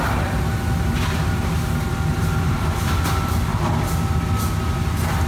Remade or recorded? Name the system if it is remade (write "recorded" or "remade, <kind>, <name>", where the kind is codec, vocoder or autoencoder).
recorded